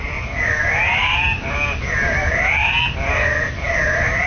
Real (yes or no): yes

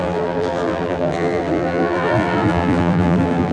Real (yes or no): no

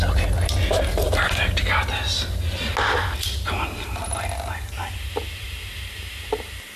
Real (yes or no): yes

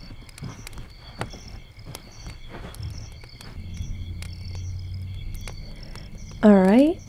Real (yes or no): yes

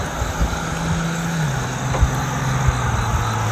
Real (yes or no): yes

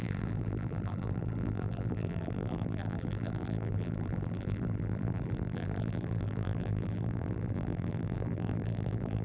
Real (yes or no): no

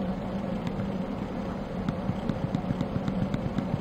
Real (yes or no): yes